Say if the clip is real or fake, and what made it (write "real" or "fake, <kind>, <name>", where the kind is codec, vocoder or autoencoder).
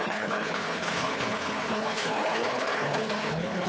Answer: fake, codec, HILCodec